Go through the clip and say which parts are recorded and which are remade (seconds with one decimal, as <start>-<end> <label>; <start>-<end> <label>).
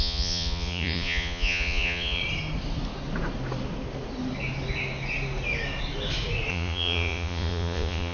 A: 0.0-2.2 remade; 2.2-6.5 recorded; 6.5-8.1 remade